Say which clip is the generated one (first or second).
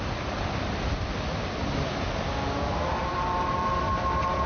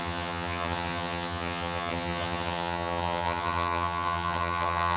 second